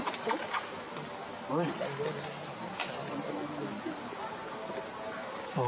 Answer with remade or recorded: recorded